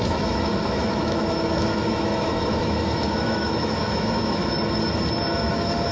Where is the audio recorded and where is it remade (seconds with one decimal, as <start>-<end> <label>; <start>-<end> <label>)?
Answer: 0.0-4.4 remade; 4.4-5.5 recorded; 5.5-5.9 remade